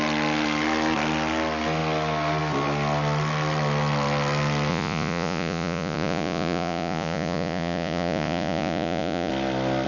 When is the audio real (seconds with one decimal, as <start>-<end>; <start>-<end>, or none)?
0.0-4.7; 9.3-9.9